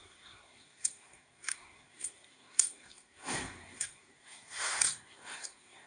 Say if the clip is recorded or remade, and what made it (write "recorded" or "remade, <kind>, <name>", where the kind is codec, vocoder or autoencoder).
remade, codec, SNAC